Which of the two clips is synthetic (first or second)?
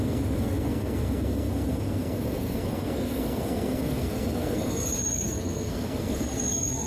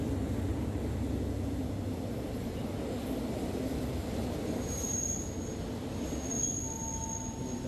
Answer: first